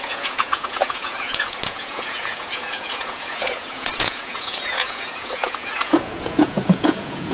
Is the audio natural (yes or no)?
no